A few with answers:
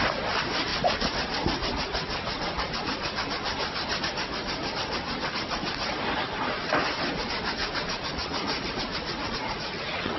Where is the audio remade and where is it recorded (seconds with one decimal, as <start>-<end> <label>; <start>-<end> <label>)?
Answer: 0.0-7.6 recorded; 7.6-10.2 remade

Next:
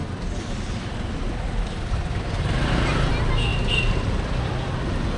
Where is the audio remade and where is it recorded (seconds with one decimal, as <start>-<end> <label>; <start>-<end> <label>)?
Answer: 0.0-5.2 recorded

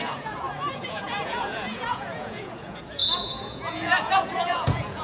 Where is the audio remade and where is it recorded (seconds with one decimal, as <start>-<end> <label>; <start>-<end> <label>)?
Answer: 0.0-5.0 remade

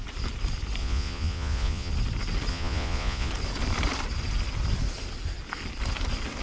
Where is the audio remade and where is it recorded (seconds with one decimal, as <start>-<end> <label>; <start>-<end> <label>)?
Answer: 0.0-0.8 recorded; 0.8-1.9 remade; 1.9-2.5 recorded; 2.5-3.3 remade; 3.3-6.4 recorded

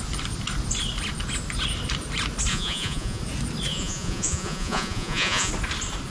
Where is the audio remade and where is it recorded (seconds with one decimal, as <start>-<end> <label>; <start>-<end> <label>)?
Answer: 0.0-2.5 recorded; 2.5-3.2 remade; 3.2-3.7 recorded; 3.7-5.5 remade; 5.5-6.1 recorded

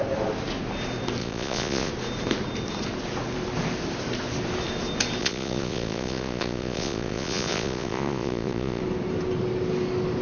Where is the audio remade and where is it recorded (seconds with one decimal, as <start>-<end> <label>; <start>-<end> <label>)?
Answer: 0.0-1.2 recorded; 1.2-1.9 remade; 1.9-5.2 recorded; 5.2-8.8 remade; 8.8-10.2 recorded

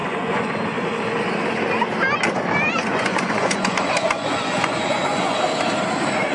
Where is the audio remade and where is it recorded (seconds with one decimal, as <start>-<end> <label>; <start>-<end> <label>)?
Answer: 0.0-0.5 remade; 0.5-2.8 recorded; 2.8-5.4 remade; 5.4-6.3 recorded

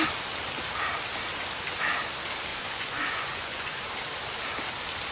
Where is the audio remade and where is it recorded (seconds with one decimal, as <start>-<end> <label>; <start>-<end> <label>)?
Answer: 0.0-2.5 recorded; 2.5-3.8 remade; 3.8-5.1 recorded